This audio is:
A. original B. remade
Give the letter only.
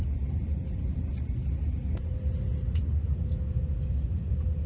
A